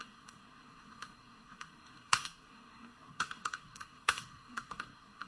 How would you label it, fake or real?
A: fake